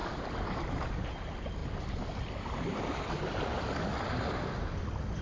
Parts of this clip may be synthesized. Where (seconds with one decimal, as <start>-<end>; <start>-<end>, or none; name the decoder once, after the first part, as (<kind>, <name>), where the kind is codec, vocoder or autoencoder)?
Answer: none